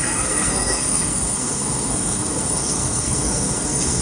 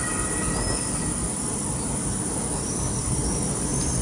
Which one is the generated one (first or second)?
first